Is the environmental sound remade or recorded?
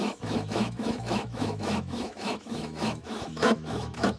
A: remade